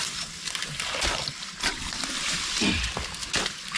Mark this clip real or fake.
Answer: real